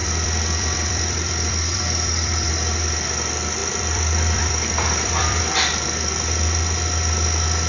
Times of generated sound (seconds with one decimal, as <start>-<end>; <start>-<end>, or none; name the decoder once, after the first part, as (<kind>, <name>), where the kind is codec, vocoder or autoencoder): 0.0-2.5 (vocoder, BigVGAN v2); 3.6-5.4